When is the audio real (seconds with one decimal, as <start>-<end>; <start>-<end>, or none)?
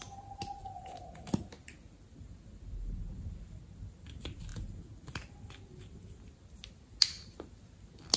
0.0-8.2